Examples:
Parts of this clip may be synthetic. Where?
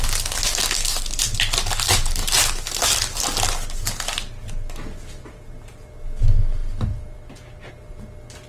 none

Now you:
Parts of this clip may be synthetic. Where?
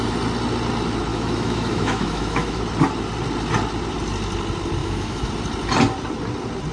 1.1-2.6 (autoencoder, DAC-VAE); 4.8-5.3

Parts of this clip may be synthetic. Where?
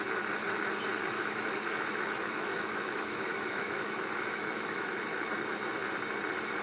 1.0-5.0 (autoencoder, DAC-VAE)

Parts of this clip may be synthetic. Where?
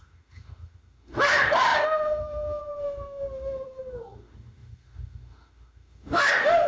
0.0-6.7 (autoencoder, DAC-VAE)